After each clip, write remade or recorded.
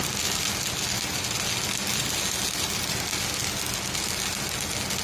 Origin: recorded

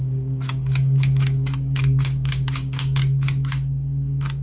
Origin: remade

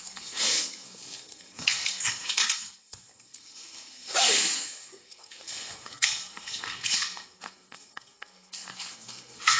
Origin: remade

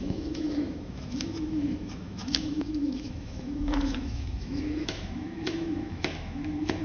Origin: remade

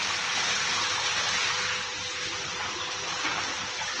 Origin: recorded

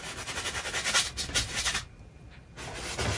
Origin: recorded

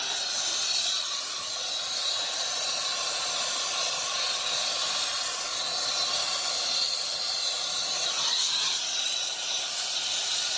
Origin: recorded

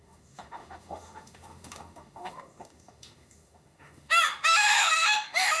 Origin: remade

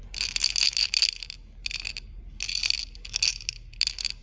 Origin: recorded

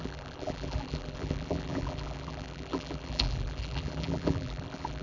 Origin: remade